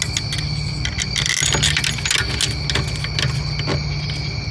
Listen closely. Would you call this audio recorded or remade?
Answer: recorded